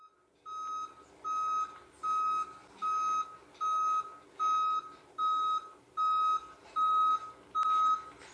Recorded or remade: recorded